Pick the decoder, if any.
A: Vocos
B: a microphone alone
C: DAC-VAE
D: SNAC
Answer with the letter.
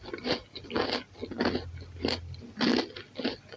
B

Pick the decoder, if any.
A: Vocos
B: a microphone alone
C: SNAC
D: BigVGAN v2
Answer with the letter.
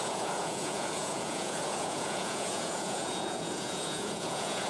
A